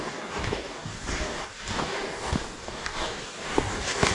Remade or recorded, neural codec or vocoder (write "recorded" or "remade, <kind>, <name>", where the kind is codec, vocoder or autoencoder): remade, codec, DAC